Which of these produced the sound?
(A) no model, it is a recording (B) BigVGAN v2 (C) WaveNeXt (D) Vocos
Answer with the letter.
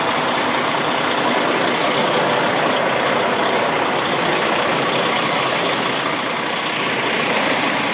A